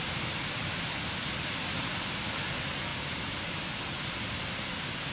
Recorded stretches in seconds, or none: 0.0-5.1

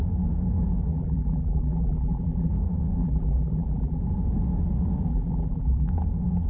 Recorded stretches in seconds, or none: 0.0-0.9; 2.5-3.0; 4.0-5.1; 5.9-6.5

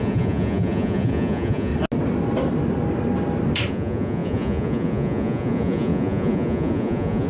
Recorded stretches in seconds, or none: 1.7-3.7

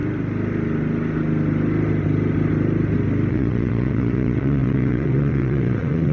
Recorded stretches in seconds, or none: 0.0-3.3